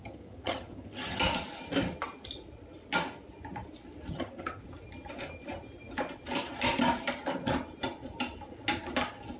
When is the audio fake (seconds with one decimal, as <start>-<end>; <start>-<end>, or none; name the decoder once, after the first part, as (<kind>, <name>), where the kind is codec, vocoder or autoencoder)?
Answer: 0.0-1.2 (vocoder, HiFi-GAN); 4.1-4.6